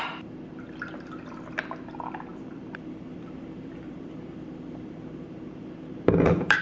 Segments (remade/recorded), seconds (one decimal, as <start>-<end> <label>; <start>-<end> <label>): 0.0-2.3 recorded; 2.3-6.6 remade